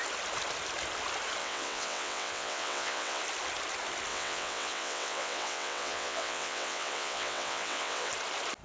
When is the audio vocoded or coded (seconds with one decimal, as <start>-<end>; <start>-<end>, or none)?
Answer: 1.4-3.2; 4.1-8.1